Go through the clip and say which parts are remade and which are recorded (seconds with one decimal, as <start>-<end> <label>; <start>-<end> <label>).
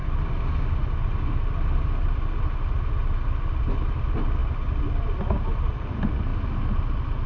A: 0.0-7.3 recorded